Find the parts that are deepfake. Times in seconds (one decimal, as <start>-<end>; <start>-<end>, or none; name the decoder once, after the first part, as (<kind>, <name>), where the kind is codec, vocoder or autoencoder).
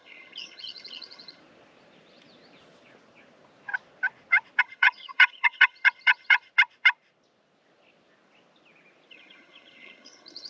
0.0-1.4 (vocoder, HiFi-GAN); 4.6-6.5; 9.1-10.5